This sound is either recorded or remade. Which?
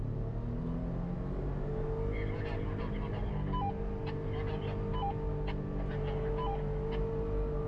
recorded